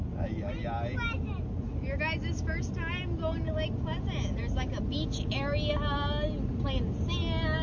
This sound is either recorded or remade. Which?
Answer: recorded